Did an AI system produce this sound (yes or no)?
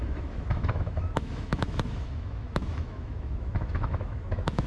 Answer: yes